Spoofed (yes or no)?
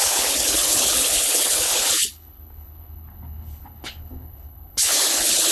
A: yes